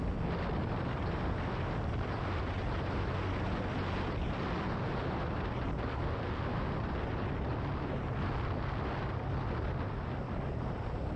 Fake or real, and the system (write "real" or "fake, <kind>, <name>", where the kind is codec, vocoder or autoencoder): real